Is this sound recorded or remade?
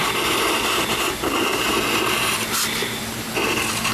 recorded